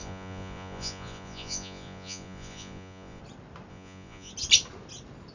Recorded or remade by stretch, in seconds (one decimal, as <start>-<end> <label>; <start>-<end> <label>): 0.0-3.2 remade; 3.2-3.7 recorded; 3.7-4.3 remade; 4.3-5.3 recorded